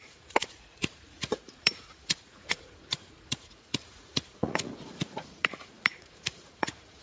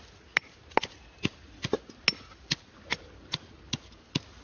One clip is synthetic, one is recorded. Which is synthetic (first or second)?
first